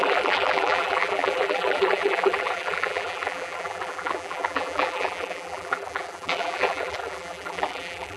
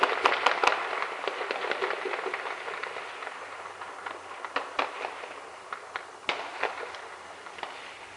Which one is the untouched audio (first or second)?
second